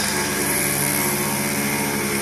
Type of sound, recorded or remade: remade